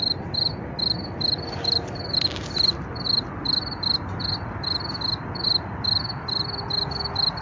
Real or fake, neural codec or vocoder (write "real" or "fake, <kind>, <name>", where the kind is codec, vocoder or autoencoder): real